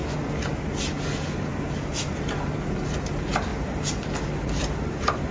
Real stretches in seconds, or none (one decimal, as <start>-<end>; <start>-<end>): 0.0-3.5